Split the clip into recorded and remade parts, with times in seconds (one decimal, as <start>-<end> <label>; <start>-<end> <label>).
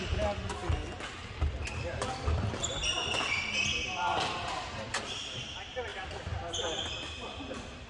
0.0-7.9 recorded